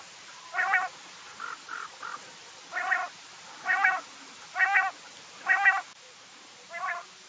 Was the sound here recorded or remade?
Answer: recorded